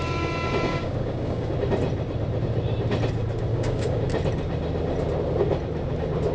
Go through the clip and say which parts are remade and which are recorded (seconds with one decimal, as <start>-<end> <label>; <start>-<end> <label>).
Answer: 0.0-0.7 recorded; 0.7-1.5 remade; 1.5-3.5 recorded; 3.5-4.0 remade; 4.0-6.3 recorded